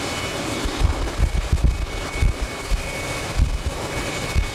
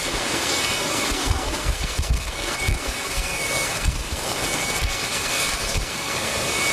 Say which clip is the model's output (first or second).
second